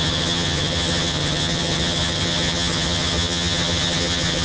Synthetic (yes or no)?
yes